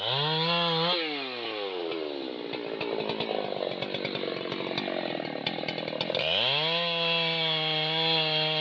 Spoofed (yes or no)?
no